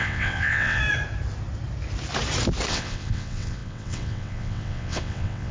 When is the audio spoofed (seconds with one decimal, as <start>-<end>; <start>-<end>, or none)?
0.0-0.8; 2.7-5.5